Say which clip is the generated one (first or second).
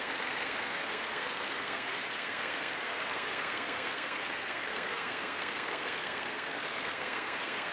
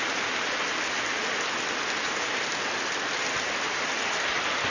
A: first